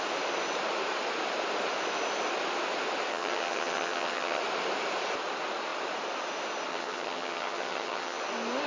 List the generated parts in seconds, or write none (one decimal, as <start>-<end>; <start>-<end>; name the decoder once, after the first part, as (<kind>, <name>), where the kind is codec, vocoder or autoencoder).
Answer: 3.1-4.4 (vocoder, HiFi-GAN); 6.7-8.2